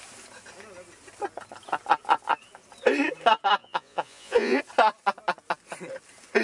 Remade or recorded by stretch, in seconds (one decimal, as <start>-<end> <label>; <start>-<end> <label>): 0.0-3.6 recorded; 3.6-4.6 remade; 4.6-6.4 recorded